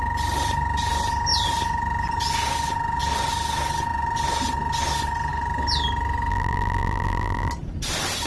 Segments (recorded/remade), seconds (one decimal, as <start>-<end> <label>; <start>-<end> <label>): 0.0-6.3 recorded; 6.3-7.5 remade; 7.5-8.3 recorded

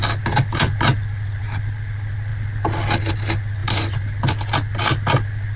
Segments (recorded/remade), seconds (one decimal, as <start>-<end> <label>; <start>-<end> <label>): 0.0-5.6 recorded

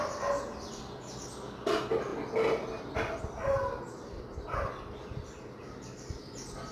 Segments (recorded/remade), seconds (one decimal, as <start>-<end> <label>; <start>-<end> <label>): 0.0-6.7 recorded

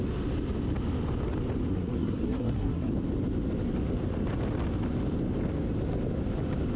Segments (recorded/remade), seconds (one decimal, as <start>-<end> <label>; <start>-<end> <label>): 0.0-1.7 recorded; 1.7-2.9 remade; 2.9-6.8 recorded